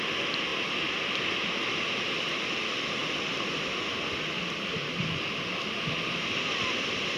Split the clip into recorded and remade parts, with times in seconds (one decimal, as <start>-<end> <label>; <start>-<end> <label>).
0.0-7.2 recorded